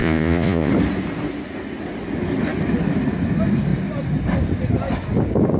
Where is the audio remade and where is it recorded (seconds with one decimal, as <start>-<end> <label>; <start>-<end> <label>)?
0.0-0.7 remade; 0.7-5.6 recorded